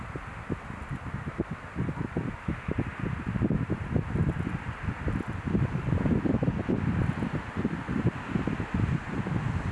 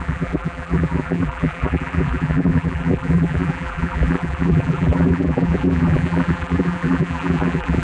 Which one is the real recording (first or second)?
first